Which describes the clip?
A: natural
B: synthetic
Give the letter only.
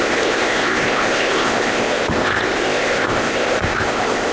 B